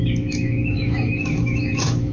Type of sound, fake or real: fake